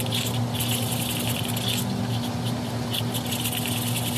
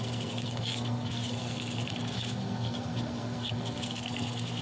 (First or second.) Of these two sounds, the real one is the first